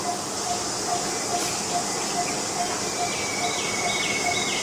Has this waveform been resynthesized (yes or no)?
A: no